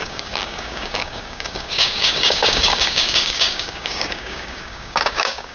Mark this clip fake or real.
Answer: fake